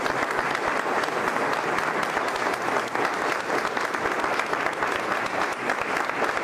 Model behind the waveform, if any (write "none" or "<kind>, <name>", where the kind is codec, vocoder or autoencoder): none